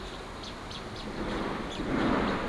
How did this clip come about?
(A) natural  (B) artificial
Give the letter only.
A